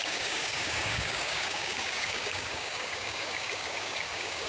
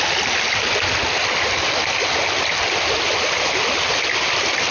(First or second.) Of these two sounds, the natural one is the second